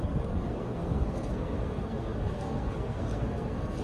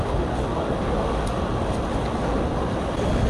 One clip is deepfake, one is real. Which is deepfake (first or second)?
first